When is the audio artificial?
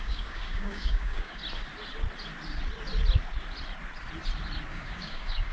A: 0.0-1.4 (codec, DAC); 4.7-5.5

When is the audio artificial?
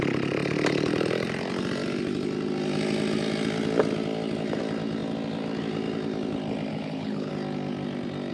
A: 6.7-7.3 (codec, HILCodec)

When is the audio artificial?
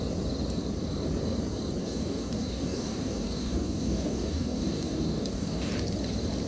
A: 1.8-5.7 (codec, DAC)